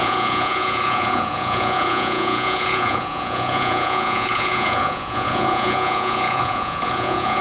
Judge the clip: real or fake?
fake